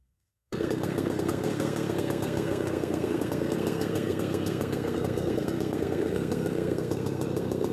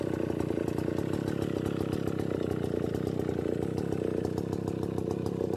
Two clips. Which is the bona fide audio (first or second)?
second